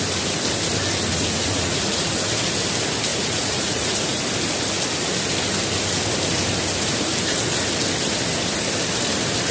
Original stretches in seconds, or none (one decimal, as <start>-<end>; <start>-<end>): 0.0-1.1; 2.1-3.1; 4.2-9.5